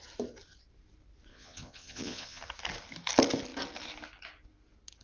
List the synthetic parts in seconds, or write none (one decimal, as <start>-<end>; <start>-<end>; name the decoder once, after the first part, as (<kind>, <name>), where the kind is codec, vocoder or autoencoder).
1.3-2.4 (vocoder, Vocos)